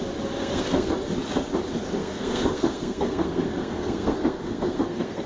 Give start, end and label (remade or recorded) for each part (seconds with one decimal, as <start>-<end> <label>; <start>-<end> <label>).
0.0-0.4 recorded; 0.4-0.9 remade; 0.9-2.0 recorded; 2.0-5.3 remade